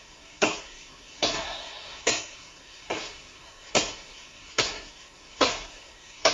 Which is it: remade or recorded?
remade